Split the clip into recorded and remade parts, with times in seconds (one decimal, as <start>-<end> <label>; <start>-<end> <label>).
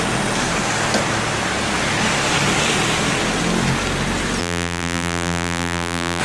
0.0-4.4 recorded; 4.4-6.2 remade